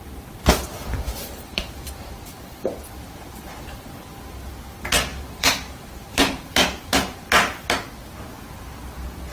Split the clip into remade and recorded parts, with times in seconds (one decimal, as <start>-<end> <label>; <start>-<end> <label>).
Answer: 0.0-1.2 recorded; 1.2-2.7 remade; 2.7-5.1 recorded; 5.1-7.2 remade; 7.2-9.3 recorded